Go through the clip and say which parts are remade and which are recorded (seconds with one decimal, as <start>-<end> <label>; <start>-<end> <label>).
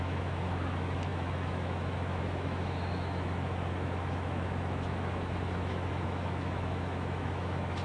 0.0-7.8 remade